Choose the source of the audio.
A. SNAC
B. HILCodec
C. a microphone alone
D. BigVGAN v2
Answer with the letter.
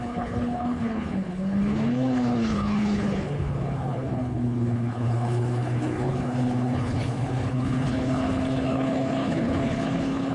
B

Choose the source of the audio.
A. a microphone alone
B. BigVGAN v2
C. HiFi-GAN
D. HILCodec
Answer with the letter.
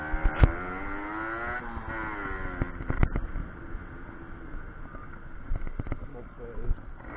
A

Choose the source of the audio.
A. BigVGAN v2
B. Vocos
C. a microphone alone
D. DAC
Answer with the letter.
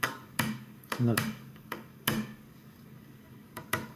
D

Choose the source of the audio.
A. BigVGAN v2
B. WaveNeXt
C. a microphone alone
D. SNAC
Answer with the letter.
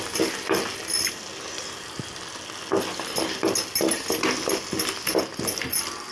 C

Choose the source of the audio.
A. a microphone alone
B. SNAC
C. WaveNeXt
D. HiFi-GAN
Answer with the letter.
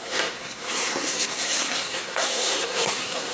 B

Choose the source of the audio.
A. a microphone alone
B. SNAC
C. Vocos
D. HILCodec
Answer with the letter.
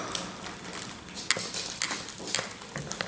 A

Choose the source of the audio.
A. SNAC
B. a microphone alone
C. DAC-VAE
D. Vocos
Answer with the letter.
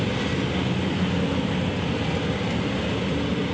B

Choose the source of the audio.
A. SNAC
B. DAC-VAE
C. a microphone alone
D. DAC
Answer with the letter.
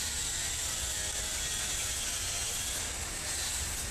C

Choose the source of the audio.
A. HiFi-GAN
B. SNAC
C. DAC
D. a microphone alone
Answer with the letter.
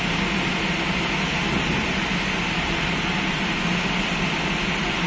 D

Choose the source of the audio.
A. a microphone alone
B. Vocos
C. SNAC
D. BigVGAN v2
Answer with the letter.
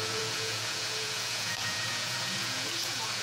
B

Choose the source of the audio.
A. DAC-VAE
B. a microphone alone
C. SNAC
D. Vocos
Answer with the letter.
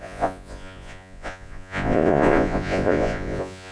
D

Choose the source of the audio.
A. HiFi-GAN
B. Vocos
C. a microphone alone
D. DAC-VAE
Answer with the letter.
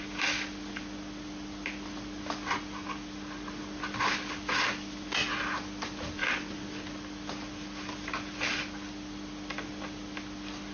C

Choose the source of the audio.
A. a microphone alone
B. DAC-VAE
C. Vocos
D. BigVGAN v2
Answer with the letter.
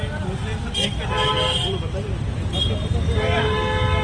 A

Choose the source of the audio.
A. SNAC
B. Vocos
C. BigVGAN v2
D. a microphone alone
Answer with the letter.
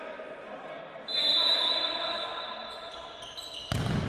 D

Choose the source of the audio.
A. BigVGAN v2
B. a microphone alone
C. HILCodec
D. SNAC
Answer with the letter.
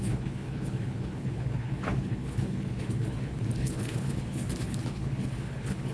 C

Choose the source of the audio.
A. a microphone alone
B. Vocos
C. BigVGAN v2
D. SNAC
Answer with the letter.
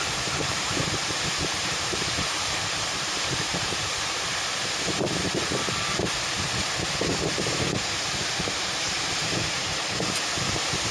C